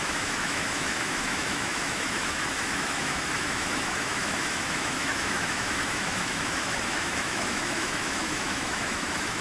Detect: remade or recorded remade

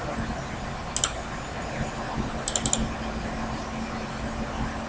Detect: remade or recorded recorded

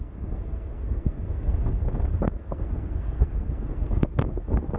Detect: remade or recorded remade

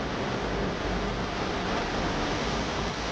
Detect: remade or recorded recorded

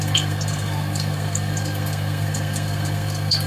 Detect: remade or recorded remade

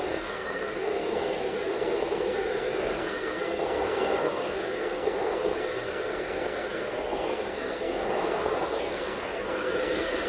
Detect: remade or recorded remade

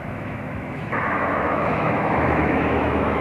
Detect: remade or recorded remade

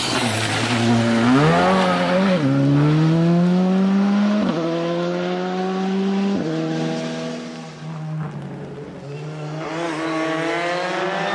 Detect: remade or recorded recorded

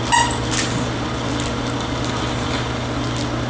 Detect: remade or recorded recorded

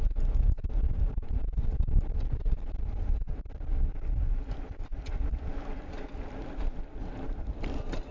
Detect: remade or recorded recorded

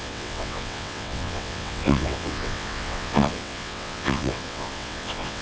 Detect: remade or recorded remade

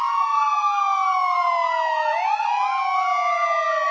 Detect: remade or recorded recorded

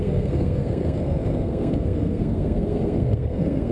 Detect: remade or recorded remade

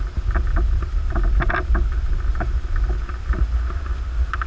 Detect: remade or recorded recorded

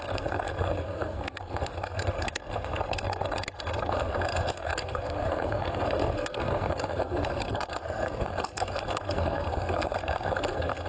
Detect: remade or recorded remade